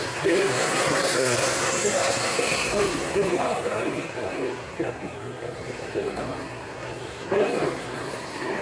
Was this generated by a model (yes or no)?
yes